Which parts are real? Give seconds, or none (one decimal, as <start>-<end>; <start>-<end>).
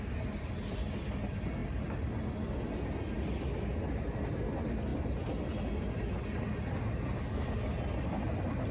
0.0-8.7